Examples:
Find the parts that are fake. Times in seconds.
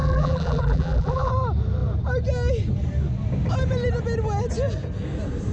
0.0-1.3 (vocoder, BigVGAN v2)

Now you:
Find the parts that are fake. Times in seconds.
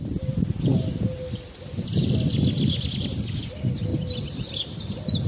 3.9-4.8 (vocoder, BigVGAN v2)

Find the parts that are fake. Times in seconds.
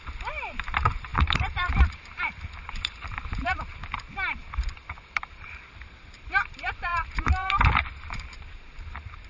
0.0-3.8 (vocoder, BigVGAN v2); 4.7-9.3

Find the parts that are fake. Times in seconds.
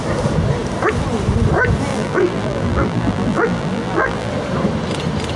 1.9-4.3 (vocoder, BigVGAN v2)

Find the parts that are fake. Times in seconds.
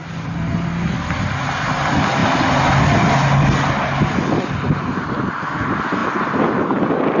none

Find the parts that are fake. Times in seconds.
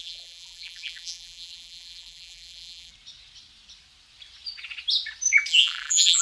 0.0-2.9 (vocoder, BigVGAN v2); 5.5-6.2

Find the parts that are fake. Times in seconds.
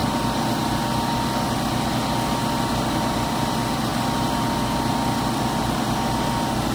0.0-1.9 (vocoder, BigVGAN v2); 2.4-3.0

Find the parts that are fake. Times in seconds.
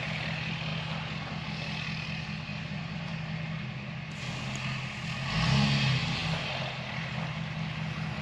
2.5-3.1 (vocoder, BigVGAN v2)